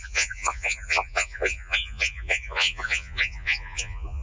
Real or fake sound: fake